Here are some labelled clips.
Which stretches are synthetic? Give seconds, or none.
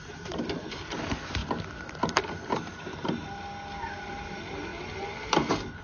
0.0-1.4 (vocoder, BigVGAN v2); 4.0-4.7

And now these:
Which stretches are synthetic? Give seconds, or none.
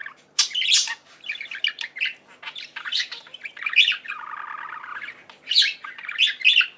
none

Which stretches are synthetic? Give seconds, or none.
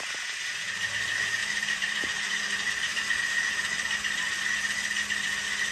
1.4-2.7 (vocoder, BigVGAN v2)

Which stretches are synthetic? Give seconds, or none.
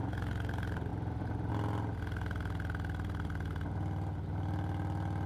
0.9-1.5 (vocoder, BigVGAN v2)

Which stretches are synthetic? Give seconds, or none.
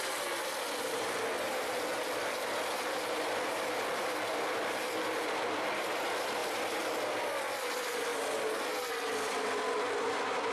none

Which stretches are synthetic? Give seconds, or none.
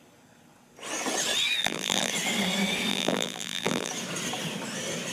1.6-2.1 (vocoder, BigVGAN v2); 2.9-3.9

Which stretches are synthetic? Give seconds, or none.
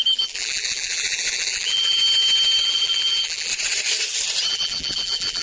0.0-2.0 (vocoder, BigVGAN v2); 2.6-3.5; 4.5-5.4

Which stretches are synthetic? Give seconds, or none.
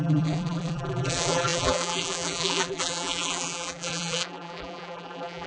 0.0-5.5 (vocoder, BigVGAN v2)